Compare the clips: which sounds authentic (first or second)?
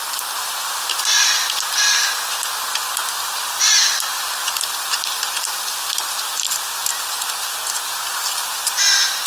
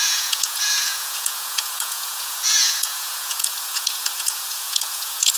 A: first